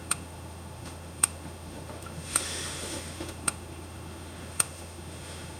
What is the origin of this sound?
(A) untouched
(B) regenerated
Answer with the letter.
B